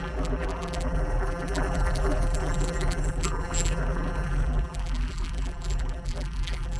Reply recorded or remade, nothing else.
remade